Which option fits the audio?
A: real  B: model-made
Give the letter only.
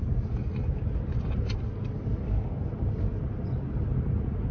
A